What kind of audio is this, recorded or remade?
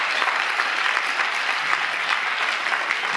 recorded